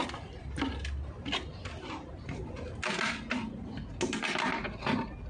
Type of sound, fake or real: real